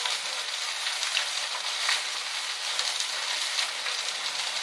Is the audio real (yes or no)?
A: yes